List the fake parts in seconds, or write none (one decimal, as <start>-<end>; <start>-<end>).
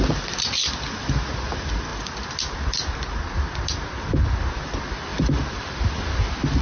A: 5.1-5.7